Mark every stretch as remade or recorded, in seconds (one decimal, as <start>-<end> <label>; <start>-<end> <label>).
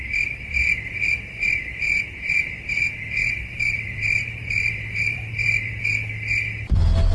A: 0.0-3.2 recorded; 3.2-5.8 remade; 5.8-7.1 recorded